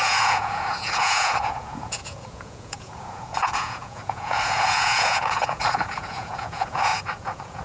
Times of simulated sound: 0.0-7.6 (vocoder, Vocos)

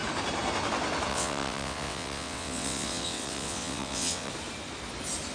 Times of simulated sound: 1.1-4.3 (vocoder, WaveNeXt)

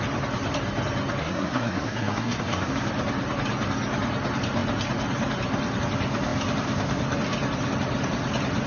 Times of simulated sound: 1.2-2.7 (codec, SNAC)

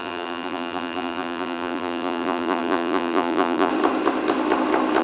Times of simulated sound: 0.0-3.7 (vocoder, BigVGAN v2)